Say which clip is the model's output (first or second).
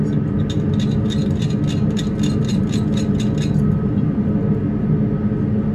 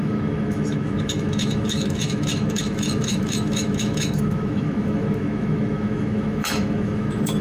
second